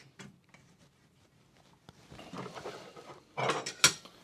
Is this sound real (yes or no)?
yes